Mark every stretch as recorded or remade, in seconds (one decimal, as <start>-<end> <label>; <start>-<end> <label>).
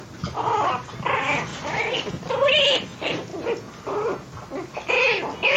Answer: 0.0-1.5 recorded; 1.5-2.1 remade; 2.1-5.6 recorded